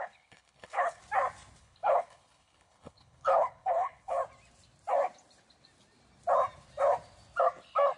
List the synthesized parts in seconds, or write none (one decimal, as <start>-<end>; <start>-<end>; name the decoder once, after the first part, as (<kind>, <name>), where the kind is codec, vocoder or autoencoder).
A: 0.0-1.0 (codec, HILCodec); 1.6-4.2